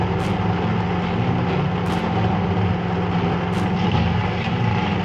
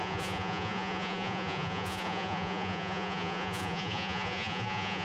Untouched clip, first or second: first